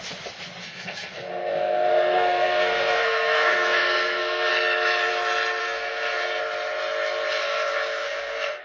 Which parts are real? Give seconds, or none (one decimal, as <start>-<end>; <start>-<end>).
0.0-0.6; 4.5-5.6; 6.4-7.4